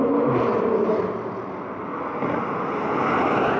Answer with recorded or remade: recorded